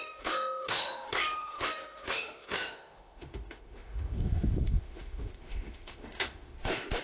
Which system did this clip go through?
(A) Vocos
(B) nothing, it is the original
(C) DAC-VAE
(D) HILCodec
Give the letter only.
C